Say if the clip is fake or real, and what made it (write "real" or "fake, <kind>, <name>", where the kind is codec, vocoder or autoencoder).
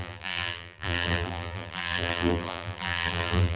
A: fake, vocoder, BigVGAN v2